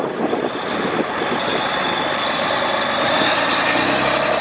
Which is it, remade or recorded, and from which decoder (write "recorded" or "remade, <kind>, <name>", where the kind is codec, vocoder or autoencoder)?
recorded